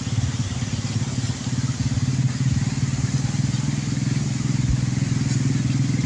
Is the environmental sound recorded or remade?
recorded